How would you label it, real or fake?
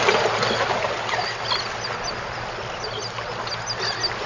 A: real